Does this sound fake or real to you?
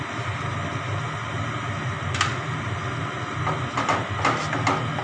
real